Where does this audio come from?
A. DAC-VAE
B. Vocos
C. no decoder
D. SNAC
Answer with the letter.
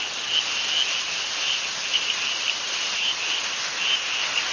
C